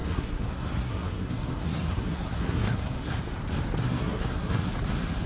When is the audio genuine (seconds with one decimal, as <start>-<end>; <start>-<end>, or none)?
3.2-3.8; 4.7-5.3